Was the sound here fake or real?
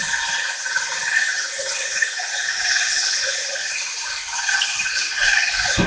fake